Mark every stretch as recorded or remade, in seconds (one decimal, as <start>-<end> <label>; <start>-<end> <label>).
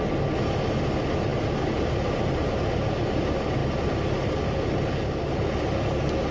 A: 0.0-6.3 recorded